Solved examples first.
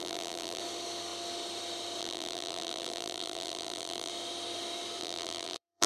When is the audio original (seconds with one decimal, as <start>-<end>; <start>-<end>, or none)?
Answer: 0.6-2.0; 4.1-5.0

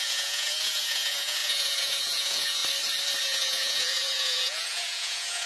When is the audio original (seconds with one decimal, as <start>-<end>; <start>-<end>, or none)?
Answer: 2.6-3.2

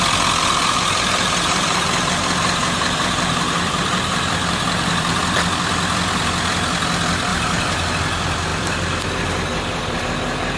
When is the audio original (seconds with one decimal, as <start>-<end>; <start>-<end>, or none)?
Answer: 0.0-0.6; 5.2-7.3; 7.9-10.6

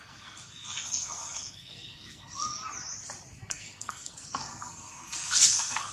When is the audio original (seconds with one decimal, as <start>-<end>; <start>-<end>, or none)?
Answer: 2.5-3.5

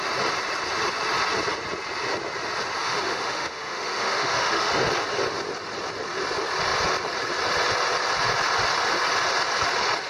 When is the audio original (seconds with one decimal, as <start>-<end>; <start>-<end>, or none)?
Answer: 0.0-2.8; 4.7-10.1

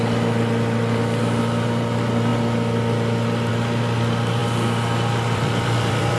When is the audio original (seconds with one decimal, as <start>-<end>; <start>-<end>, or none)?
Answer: 0.0-4.4

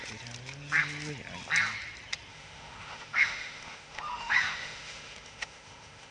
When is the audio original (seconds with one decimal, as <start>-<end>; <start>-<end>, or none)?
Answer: 0.0-2.3

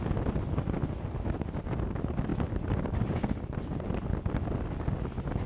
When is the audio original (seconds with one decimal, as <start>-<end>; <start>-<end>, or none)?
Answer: 0.0-5.5